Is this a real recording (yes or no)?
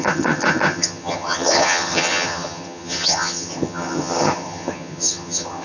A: no